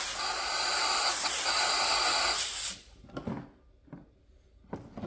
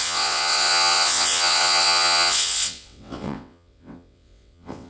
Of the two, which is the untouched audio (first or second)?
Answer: first